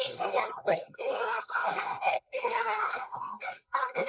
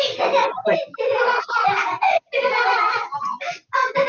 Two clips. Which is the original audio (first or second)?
second